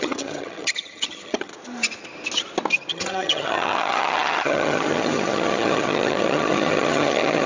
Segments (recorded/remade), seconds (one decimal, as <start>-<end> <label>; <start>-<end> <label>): 0.0-1.5 remade; 1.5-2.9 recorded; 2.9-7.5 remade